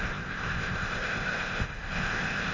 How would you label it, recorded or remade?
remade